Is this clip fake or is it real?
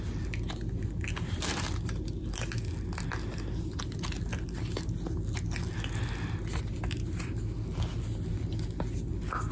real